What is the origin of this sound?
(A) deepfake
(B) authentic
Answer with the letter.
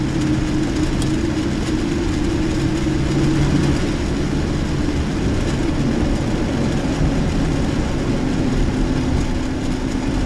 B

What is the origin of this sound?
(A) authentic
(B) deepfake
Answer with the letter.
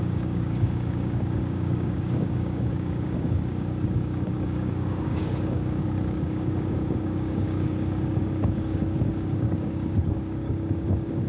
B